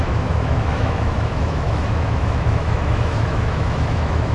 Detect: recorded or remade remade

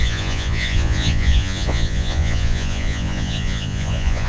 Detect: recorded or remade remade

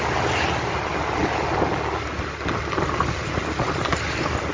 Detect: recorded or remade recorded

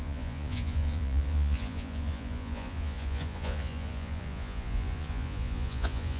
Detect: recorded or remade remade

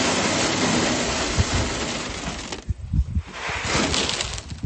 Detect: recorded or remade recorded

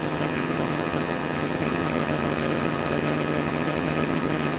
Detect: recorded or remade remade